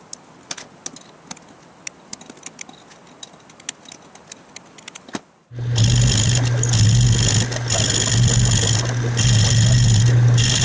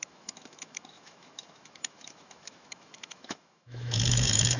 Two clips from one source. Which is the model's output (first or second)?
second